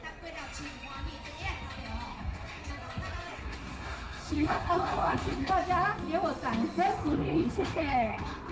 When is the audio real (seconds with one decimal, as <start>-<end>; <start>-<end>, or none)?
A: 0.0-2.1; 2.7-3.3; 5.5-7.1